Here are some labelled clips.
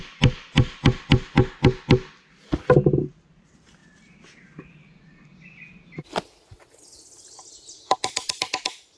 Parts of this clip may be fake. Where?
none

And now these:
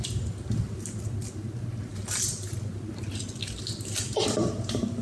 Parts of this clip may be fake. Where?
none